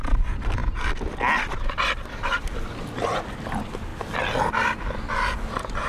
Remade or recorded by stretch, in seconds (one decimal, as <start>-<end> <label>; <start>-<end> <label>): 0.0-5.9 recorded